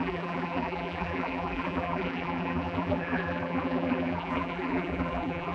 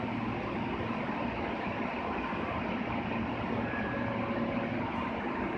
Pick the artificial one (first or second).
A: first